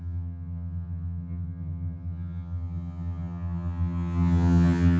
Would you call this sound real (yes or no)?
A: no